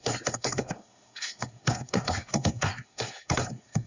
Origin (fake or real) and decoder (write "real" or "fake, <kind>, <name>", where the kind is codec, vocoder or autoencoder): fake, codec, SNAC